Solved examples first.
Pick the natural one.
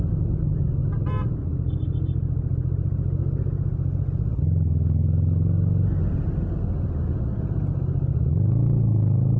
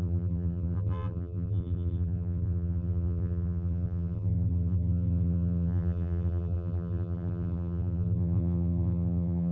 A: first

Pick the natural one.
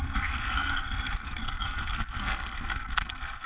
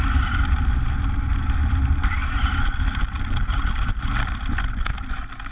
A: second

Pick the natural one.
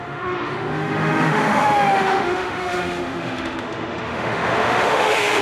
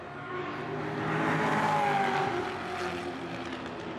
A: second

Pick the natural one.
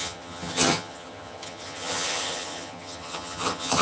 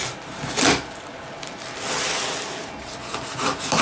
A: second